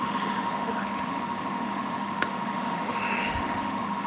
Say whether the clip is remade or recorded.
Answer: remade